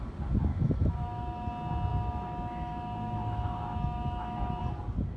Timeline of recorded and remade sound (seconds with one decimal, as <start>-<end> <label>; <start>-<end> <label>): 0.0-0.5 recorded; 0.5-1.5 remade; 1.5-1.9 recorded; 1.9-4.6 remade; 4.6-5.2 recorded